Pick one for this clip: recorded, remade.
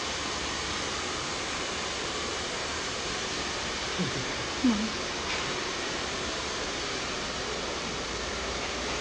remade